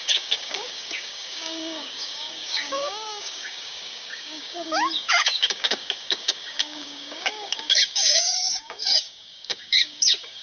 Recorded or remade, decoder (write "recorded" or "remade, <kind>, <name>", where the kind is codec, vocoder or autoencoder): remade, codec, DAC